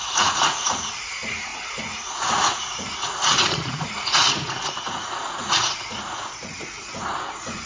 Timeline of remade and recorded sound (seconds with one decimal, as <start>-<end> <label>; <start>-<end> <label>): 0.0-7.7 remade